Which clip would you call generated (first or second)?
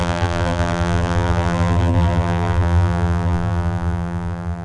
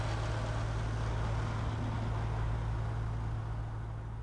first